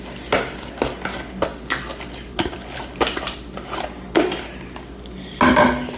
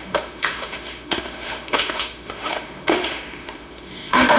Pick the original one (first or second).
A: first